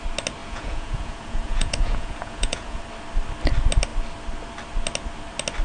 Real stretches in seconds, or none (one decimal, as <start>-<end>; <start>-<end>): 0.0-0.4; 2.8-5.6